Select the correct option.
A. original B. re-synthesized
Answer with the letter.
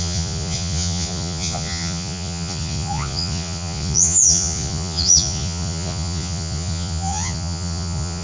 B